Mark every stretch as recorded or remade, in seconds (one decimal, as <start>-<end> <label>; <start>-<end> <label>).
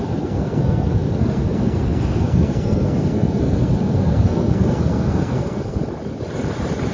0.0-5.8 remade; 5.8-6.9 recorded